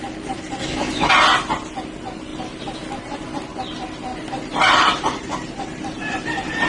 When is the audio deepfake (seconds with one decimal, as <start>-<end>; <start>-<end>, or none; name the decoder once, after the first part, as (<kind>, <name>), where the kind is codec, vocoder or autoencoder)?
0.6-1.1 (autoencoder, DAC-VAE)